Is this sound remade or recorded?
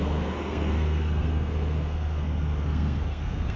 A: remade